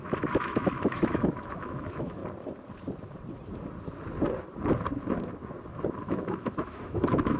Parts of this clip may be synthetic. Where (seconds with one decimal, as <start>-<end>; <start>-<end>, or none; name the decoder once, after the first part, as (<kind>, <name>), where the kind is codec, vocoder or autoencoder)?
0.0-2.2 (autoencoder, DAC-VAE); 6.0-7.4